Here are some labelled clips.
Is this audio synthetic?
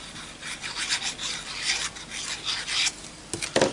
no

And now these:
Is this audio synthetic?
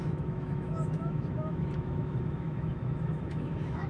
yes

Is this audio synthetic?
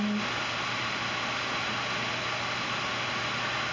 no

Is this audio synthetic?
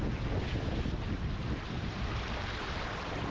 no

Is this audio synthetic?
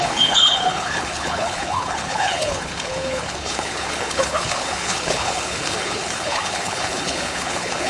yes